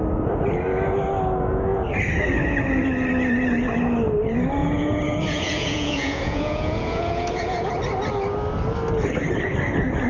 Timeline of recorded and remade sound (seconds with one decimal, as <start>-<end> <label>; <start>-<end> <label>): 0.0-4.6 recorded; 4.6-7.7 remade; 7.7-10.1 recorded